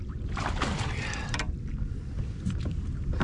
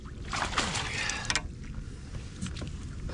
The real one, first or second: second